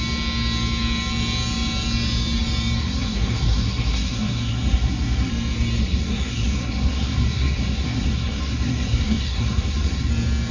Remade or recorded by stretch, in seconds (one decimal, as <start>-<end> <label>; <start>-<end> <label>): 0.0-2.8 recorded; 2.8-5.3 remade; 5.3-5.8 recorded; 5.8-10.1 remade; 10.1-10.5 recorded